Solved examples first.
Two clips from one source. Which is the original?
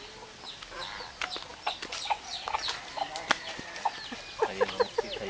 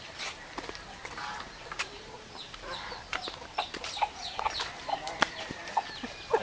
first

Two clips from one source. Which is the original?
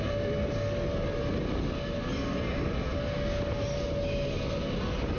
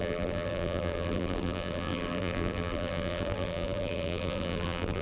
first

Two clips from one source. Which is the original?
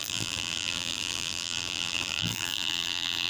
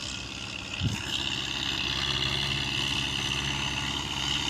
second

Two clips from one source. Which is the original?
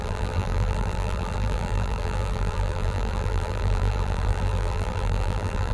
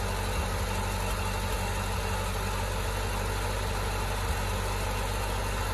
second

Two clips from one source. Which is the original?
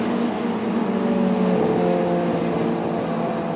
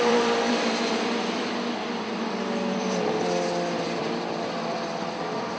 first